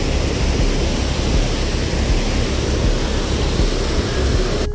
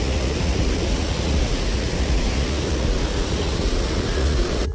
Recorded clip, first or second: first